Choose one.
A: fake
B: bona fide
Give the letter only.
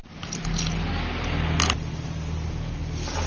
B